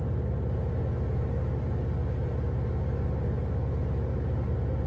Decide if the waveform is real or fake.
real